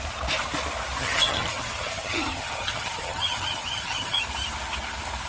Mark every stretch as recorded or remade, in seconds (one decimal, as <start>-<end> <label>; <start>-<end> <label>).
0.0-1.0 recorded; 1.0-4.2 remade; 4.2-5.3 recorded